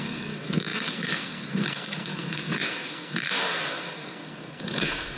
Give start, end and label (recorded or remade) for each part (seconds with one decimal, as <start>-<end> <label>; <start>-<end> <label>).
0.0-5.2 remade